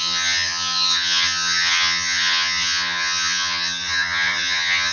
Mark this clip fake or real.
fake